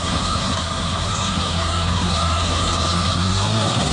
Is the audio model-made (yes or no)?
yes